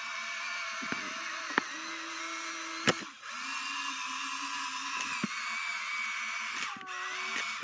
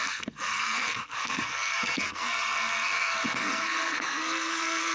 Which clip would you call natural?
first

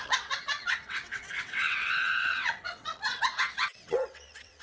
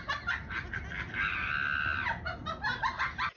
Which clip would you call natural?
second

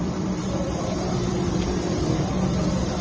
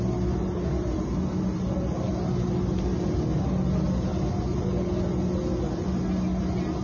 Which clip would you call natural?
second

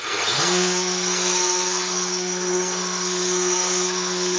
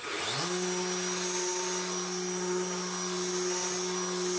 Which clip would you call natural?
second